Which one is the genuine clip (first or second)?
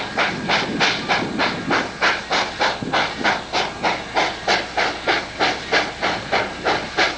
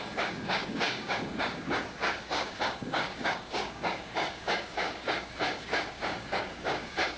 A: first